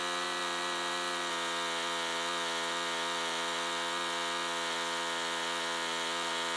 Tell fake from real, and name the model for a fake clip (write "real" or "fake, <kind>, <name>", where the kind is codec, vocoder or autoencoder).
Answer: real